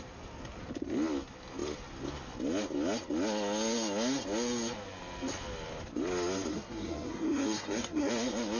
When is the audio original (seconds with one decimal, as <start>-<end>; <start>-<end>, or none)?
0.0-6.5; 8.1-8.6